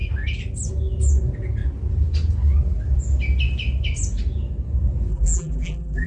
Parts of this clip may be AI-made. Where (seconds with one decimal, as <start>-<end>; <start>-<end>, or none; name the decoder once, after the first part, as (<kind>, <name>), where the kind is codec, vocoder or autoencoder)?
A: 5.1-6.1 (vocoder, BigVGAN v2)